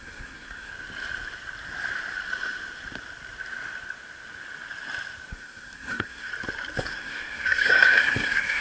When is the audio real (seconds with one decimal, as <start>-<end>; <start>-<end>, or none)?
0.7-5.3; 6.3-6.9